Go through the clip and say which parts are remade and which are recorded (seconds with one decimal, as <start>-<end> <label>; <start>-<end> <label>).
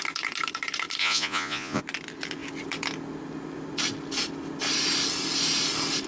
0.0-1.0 recorded; 1.0-1.8 remade; 1.8-6.1 recorded